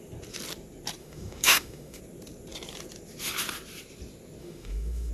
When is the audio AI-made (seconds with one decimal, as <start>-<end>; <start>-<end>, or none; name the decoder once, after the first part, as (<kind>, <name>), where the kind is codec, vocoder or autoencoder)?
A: 1.0-2.0 (autoencoder, DAC-VAE); 4.4-5.1